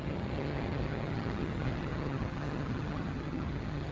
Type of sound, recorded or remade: remade